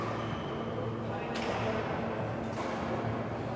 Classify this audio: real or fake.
real